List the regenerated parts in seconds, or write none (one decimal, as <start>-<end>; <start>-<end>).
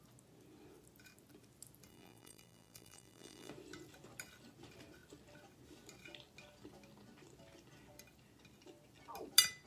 1.9-3.5